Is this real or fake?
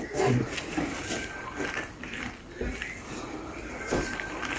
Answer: fake